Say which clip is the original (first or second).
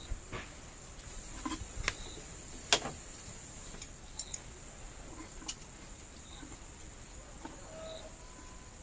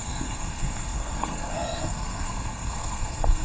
first